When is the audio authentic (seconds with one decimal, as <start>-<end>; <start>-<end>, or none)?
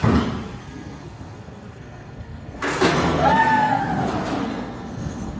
0.0-0.6; 3.8-4.4